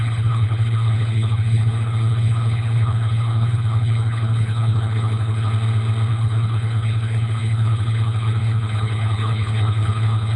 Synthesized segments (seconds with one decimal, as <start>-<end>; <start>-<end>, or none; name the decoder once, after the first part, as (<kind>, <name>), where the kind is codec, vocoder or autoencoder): 0.0-5.5 (codec, HILCodec); 6.1-10.4